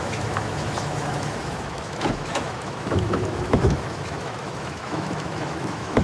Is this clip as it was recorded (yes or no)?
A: no